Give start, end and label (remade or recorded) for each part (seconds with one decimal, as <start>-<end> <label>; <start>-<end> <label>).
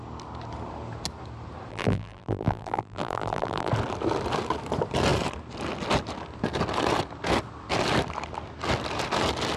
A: 0.0-1.7 recorded; 1.7-3.7 remade; 3.7-9.6 recorded